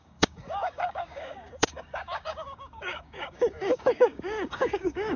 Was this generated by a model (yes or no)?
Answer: yes